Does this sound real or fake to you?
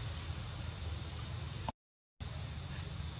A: real